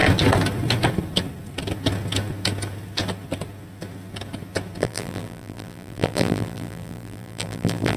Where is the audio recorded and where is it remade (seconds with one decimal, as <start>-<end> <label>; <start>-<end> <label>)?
0.0-4.8 recorded; 4.8-8.0 remade